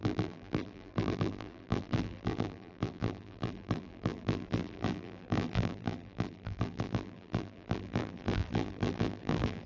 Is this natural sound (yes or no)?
no